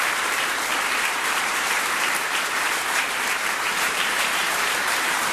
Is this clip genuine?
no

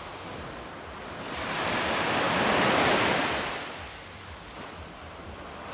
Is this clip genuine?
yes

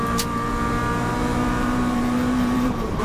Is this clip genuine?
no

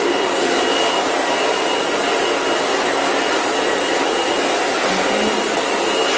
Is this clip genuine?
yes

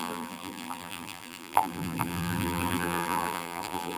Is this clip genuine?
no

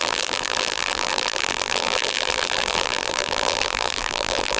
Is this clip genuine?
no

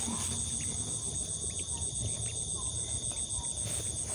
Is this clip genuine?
yes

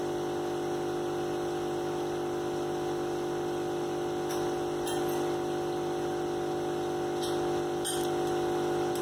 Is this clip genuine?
yes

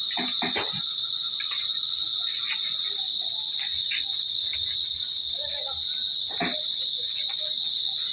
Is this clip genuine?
yes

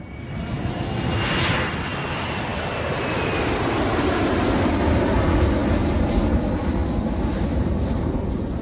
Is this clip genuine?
yes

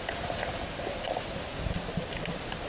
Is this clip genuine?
yes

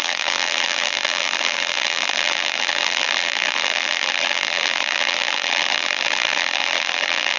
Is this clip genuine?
no